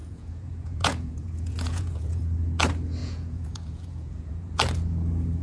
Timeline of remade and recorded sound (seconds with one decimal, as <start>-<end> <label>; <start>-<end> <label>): 0.0-2.2 remade; 2.2-3.0 recorded; 3.0-4.5 remade; 4.5-5.4 recorded